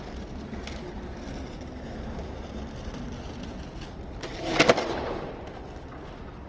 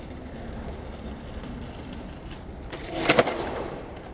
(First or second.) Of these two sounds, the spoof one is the second